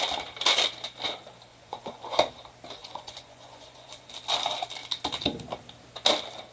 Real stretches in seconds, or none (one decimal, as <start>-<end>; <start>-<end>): 0.0-1.5; 2.3-2.8; 4.1-6.5